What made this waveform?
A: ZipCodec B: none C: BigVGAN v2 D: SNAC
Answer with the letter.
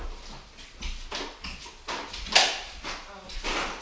B